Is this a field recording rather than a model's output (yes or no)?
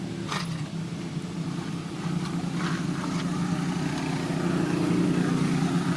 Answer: yes